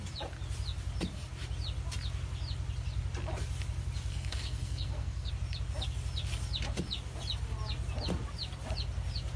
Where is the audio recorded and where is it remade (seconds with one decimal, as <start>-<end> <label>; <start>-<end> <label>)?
0.0-4.1 recorded; 4.1-5.3 remade; 5.3-9.4 recorded

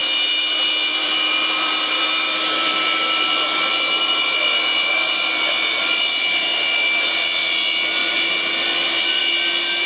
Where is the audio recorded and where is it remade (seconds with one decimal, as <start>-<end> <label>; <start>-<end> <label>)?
0.0-3.7 remade; 3.7-8.0 recorded; 8.0-9.2 remade; 9.2-9.9 recorded

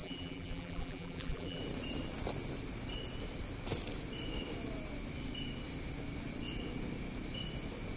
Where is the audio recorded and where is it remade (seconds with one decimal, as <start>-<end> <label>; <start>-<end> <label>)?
0.0-1.6 remade; 1.6-8.0 recorded